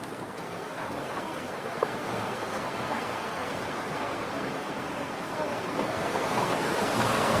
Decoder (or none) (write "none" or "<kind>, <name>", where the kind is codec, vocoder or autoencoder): codec, SNAC